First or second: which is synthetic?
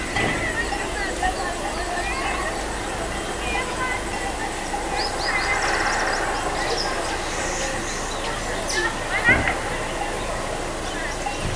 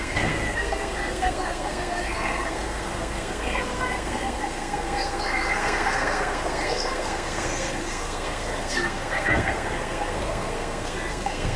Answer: second